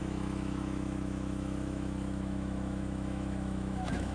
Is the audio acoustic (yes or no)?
no